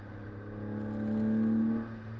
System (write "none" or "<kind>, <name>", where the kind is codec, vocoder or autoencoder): none